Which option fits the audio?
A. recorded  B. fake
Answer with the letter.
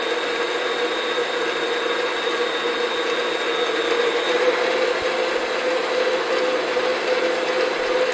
A